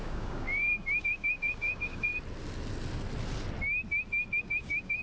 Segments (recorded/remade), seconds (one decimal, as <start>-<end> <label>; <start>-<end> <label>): 0.0-2.1 remade; 2.1-4.4 recorded; 4.4-5.0 remade